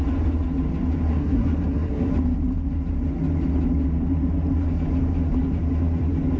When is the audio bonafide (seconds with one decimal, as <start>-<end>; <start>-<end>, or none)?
0.0-1.1; 2.1-6.4

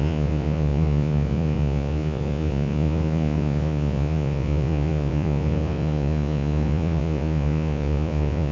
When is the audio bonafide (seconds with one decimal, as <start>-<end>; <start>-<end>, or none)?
none

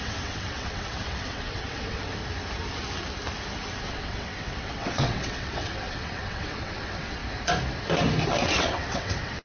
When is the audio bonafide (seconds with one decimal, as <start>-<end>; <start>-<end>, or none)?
2.2-3.8; 7.2-8.4